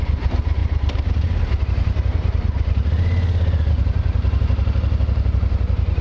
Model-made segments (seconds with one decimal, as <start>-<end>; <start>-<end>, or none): none